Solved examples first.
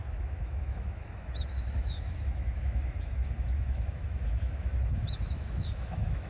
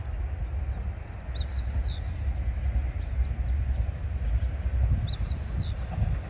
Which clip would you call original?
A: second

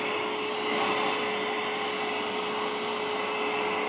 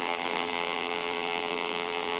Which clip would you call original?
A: first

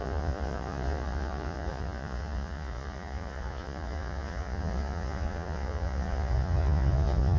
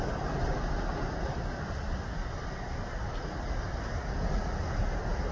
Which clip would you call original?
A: second